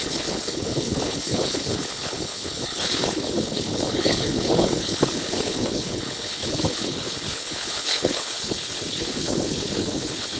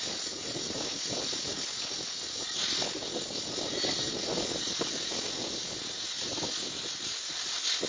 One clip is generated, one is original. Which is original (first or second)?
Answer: second